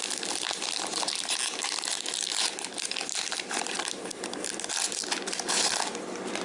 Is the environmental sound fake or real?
real